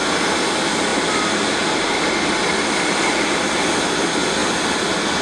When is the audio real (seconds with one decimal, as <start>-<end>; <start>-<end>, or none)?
0.0-5.2